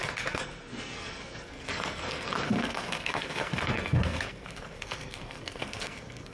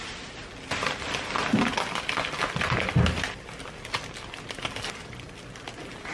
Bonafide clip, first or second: second